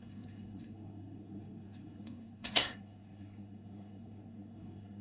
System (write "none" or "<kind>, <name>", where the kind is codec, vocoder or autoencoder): codec, SNAC